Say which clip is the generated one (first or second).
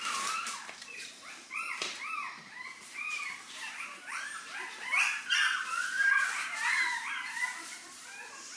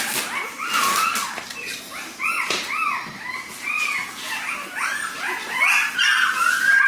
first